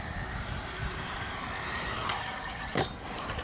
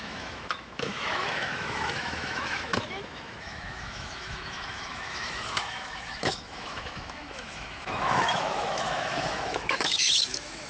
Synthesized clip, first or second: second